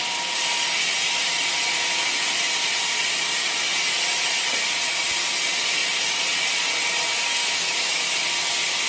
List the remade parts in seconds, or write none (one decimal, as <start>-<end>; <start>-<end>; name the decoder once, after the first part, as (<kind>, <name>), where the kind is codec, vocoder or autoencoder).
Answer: 7.4-8.1 (autoencoder, DAC-VAE)